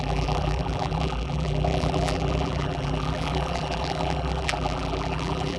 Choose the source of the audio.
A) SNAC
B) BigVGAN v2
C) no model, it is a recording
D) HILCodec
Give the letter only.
B